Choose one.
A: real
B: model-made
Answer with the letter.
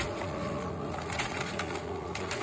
B